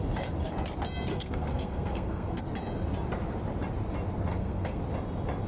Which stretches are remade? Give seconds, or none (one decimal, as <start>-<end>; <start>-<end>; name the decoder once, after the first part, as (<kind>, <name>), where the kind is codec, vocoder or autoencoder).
1.1-2.4 (codec, SNAC); 4.3-4.8